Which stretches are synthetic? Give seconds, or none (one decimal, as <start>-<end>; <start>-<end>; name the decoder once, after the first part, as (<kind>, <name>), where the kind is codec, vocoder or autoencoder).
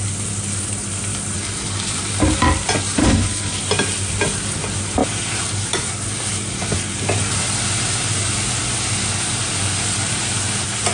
3.0-3.6 (codec, HILCodec)